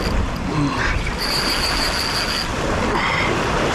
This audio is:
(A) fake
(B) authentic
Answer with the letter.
B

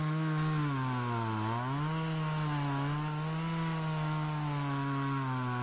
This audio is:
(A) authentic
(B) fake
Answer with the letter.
A